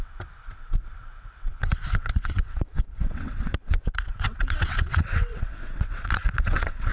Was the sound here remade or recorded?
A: remade